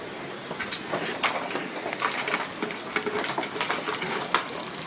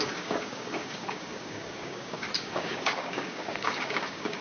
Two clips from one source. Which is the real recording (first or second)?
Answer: first